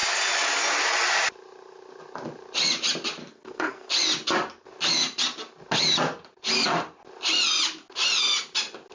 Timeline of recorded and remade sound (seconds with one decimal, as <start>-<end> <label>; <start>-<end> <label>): 0.0-3.2 recorded; 3.2-3.9 remade; 3.9-8.9 recorded